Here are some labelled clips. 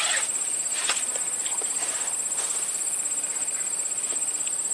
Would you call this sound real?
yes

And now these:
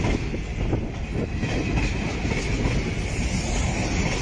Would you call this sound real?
yes